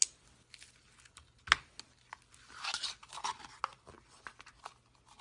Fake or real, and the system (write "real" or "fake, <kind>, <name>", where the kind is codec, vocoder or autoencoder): real